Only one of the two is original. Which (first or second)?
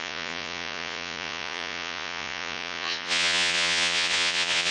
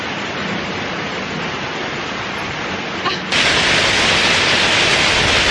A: second